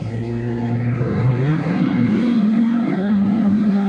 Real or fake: fake